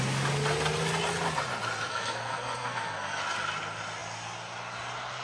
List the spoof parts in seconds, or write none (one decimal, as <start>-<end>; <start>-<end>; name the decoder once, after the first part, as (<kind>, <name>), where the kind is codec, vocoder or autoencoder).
1.9-3.2 (codec, SNAC)